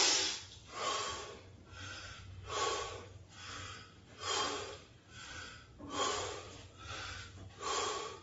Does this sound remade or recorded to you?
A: recorded